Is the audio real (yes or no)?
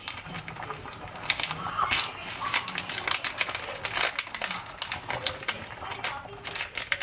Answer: yes